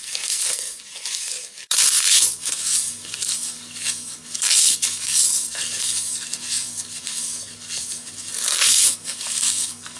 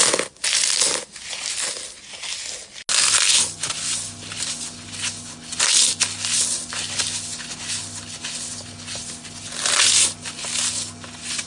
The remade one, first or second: first